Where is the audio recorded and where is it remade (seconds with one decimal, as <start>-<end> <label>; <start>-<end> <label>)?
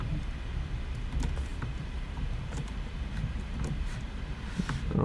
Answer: 0.0-1.5 recorded; 1.5-4.3 remade; 4.3-5.0 recorded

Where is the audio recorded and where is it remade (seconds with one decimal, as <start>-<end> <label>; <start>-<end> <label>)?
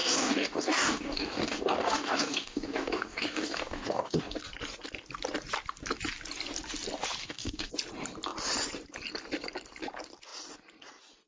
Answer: 0.0-4.4 remade; 4.4-7.2 recorded; 7.2-7.7 remade; 7.7-11.3 recorded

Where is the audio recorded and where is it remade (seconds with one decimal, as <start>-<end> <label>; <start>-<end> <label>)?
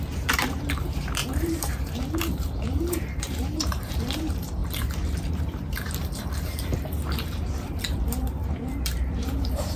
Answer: 0.0-9.8 remade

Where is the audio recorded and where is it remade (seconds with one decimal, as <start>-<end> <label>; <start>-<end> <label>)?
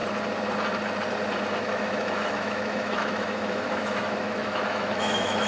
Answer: 0.0-1.5 recorded; 1.5-5.5 remade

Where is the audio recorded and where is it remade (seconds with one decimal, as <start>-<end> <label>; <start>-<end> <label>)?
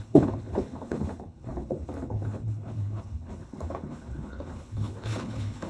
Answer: 0.0-5.7 remade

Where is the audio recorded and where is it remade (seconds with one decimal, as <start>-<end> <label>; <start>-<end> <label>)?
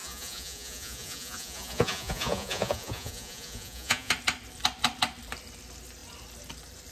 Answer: 0.0-4.1 remade; 4.1-6.9 recorded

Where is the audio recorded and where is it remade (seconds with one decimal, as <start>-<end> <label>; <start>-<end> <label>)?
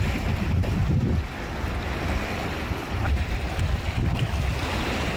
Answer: 0.0-5.2 recorded